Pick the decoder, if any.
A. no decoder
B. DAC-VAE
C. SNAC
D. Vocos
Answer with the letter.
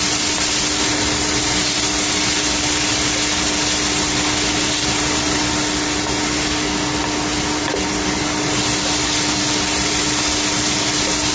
A